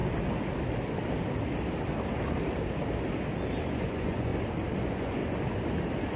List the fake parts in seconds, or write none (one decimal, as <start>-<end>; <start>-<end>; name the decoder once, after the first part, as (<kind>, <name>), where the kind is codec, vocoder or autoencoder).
3.7-4.3 (vocoder, Vocos); 4.8-5.2